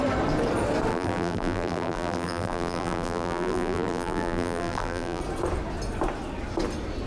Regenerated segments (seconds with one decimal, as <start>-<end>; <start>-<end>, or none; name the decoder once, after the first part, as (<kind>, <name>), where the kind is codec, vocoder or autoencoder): 0.9-5.2 (vocoder, BigVGAN v2)